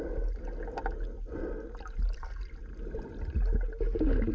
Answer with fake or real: real